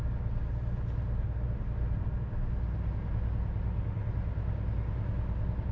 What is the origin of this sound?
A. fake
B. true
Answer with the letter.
B